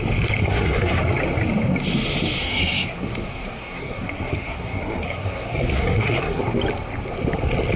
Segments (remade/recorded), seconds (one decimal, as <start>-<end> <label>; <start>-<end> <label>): 0.0-0.4 recorded; 0.4-1.0 remade; 1.0-2.4 recorded; 2.4-6.4 remade; 6.4-7.8 recorded